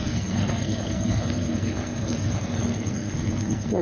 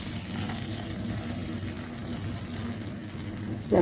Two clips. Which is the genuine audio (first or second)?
second